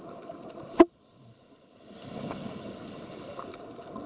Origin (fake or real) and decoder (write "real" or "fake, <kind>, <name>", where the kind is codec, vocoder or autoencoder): real